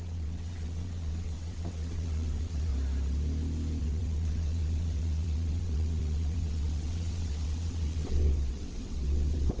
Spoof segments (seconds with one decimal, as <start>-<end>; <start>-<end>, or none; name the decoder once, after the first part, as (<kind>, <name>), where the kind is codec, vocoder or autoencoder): 0.0-2.7 (vocoder, WaveNeXt); 3.8-9.6